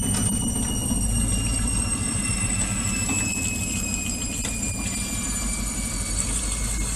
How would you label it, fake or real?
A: real